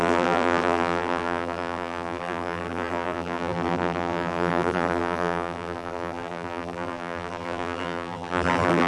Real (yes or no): no